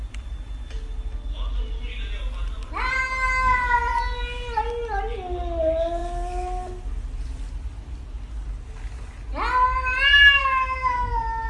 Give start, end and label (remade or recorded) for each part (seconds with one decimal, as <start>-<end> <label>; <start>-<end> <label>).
0.0-10.4 recorded; 10.4-11.1 remade; 11.1-11.5 recorded